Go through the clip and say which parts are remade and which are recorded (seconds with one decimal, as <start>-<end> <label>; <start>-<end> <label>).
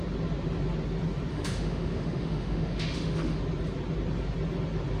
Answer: 0.0-1.3 recorded; 1.3-3.4 remade; 3.4-5.0 recorded